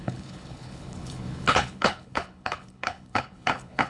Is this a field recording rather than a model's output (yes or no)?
no